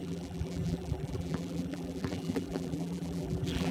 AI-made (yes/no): yes